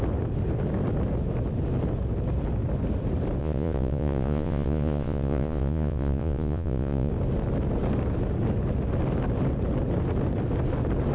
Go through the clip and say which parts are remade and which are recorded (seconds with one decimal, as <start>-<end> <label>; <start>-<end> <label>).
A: 0.0-3.4 recorded; 3.4-7.1 remade; 7.1-11.1 recorded

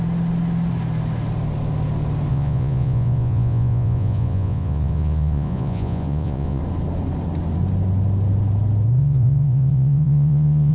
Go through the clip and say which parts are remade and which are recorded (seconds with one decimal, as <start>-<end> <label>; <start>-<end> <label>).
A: 0.0-2.3 recorded; 2.3-6.6 remade; 6.6-9.0 recorded; 9.0-10.7 remade

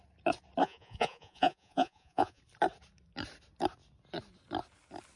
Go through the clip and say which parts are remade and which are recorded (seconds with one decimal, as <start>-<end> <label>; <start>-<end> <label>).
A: 0.0-0.6 recorded; 0.6-2.4 remade; 2.4-5.2 recorded

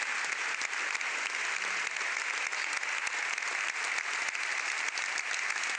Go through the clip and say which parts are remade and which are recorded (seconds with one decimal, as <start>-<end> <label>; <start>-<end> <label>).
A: 0.0-5.8 recorded

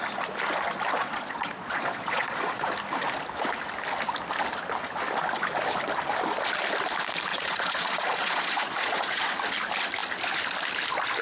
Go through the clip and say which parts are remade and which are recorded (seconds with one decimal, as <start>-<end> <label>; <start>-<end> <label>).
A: 0.0-1.0 recorded; 1.0-2.7 remade; 2.7-7.3 recorded; 7.3-9.3 remade; 9.3-11.2 recorded

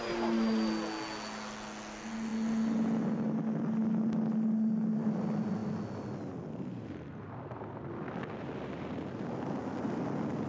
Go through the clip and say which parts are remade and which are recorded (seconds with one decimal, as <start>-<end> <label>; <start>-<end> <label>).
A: 0.0-10.5 recorded